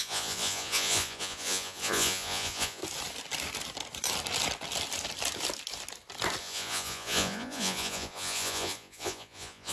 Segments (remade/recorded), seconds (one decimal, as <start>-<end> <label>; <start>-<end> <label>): 0.0-2.8 remade; 2.8-6.4 recorded; 6.4-9.7 remade